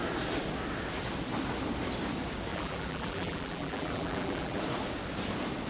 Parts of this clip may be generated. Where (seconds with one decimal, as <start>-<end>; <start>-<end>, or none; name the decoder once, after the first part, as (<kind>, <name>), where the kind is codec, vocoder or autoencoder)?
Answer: 2.5-4.6 (vocoder, BigVGAN v2)

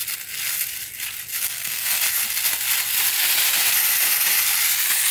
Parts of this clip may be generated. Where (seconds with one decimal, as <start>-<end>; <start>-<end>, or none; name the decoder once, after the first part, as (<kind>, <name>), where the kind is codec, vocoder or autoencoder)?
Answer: 1.4-2.0 (codec, SNAC)

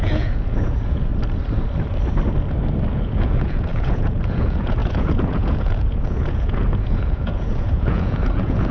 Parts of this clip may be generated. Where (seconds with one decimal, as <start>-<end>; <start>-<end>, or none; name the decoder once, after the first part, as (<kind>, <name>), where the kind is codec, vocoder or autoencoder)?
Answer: 0.0-1.1 (vocoder, Vocos); 2.9-8.7